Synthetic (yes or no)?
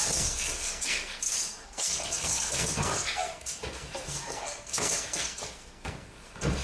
yes